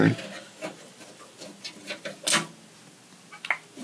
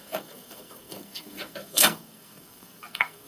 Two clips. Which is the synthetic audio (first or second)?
second